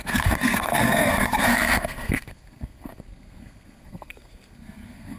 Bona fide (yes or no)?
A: no